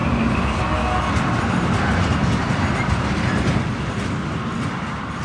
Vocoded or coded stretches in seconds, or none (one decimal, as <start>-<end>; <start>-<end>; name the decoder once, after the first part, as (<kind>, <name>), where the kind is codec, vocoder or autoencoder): 0.0-0.6 (vocoder, BigVGAN v2); 2.2-4.7